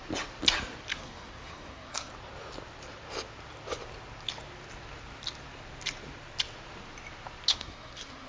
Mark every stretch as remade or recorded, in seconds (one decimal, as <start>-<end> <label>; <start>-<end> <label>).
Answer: 0.0-0.9 recorded; 0.9-2.1 remade; 2.1-7.5 recorded; 7.5-8.3 remade